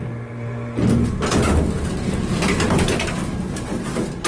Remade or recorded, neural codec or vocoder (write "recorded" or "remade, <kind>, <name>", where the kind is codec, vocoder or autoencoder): recorded